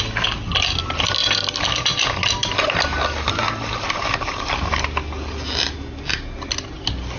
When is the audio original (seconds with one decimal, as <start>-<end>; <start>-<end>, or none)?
0.0-7.2